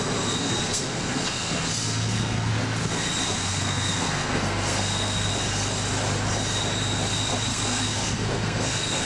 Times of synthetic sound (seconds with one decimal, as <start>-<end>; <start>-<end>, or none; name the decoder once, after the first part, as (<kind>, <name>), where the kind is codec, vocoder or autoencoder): 0.4-2.5 (codec, SNAC); 3.2-5.3; 7.5-9.1